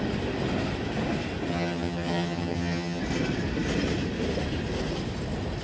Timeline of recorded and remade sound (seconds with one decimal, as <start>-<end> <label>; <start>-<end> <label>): 0.0-1.5 recorded; 1.5-3.0 remade; 3.0-5.6 recorded